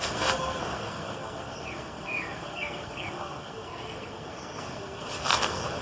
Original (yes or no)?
no